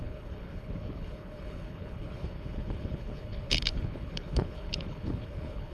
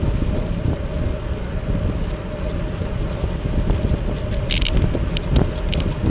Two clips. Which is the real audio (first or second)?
second